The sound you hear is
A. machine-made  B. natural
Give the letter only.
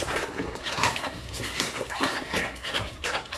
A